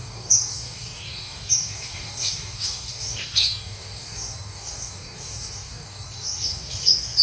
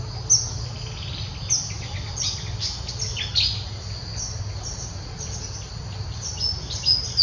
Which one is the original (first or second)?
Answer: second